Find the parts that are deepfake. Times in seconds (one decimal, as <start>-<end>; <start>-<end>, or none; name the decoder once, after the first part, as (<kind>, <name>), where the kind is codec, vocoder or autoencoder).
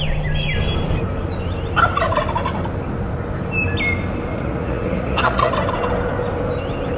4.3-5.5 (vocoder, Vocos)